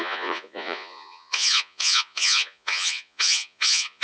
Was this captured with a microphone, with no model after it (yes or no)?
no